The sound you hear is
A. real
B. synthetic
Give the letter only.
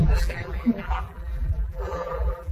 B